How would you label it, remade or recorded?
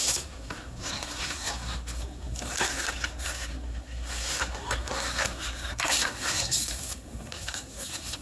remade